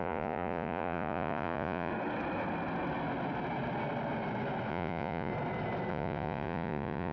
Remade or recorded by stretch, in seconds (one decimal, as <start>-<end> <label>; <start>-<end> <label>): 0.0-1.9 remade; 1.9-4.7 recorded; 4.7-5.3 remade; 5.3-5.9 recorded; 5.9-7.1 remade